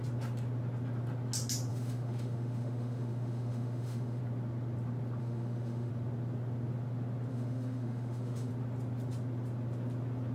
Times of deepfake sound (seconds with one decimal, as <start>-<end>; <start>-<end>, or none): 1.7-4.2; 5.2-5.9; 7.3-8.5